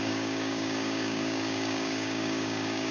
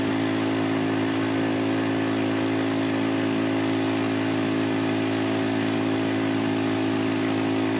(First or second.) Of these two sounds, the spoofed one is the first